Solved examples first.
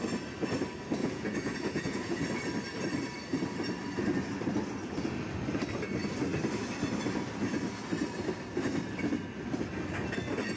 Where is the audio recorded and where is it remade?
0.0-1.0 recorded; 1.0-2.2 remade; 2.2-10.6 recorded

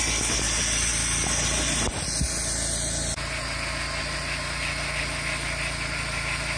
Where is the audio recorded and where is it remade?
0.0-6.6 recorded

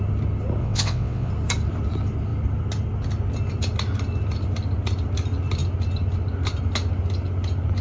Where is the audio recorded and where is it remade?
0.0-0.6 recorded; 0.6-1.3 remade; 1.3-7.8 recorded

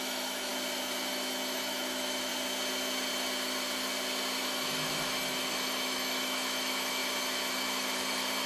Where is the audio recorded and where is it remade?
0.0-0.5 remade; 0.5-1.1 recorded; 1.1-2.3 remade; 2.3-4.4 recorded; 4.4-7.0 remade; 7.0-7.5 recorded; 7.5-8.5 remade

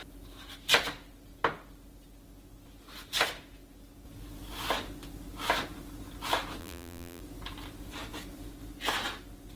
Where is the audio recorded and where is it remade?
0.0-6.6 recorded; 6.6-7.2 remade; 7.2-9.6 recorded